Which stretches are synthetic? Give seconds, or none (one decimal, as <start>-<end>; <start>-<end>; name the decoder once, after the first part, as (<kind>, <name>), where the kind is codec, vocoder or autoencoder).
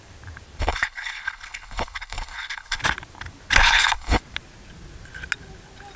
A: 0.6-2.8 (codec, HILCodec); 3.6-4.2